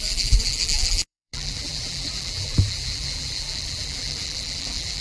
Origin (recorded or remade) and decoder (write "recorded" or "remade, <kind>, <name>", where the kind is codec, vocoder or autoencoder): remade, vocoder, BigVGAN v2